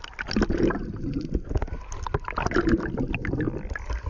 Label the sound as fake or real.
real